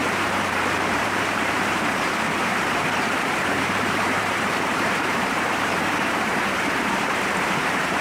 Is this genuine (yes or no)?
no